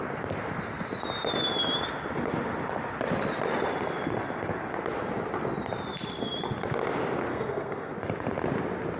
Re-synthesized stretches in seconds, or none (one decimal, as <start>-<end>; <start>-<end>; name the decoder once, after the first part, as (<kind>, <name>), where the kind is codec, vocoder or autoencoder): 7.3-7.9 (codec, SNAC)

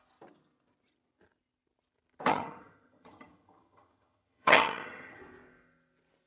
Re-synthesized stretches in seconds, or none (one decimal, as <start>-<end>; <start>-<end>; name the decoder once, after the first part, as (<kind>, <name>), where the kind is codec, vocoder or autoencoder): 2.3-5.2 (vocoder, HiFi-GAN)

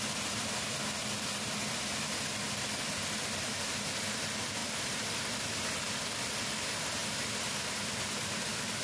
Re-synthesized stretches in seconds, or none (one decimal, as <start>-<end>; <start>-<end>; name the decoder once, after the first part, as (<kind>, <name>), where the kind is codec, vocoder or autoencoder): 4.6-5.4 (vocoder, BigVGAN v2)

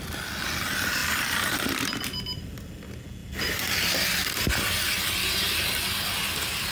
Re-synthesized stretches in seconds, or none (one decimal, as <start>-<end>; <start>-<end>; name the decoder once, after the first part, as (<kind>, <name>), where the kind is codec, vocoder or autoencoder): 1.0-2.7 (vocoder, BigVGAN v2); 3.2-6.7